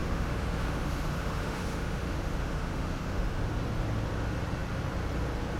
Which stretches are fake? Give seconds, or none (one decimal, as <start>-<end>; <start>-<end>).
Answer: 0.0-3.4